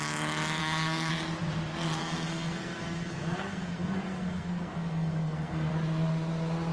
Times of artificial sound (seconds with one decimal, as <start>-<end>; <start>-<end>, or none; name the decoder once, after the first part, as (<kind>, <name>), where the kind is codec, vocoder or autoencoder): 0.6-1.1 (codec, SNAC); 2.0-5.7